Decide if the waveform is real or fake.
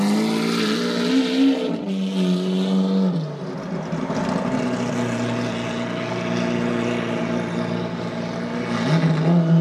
real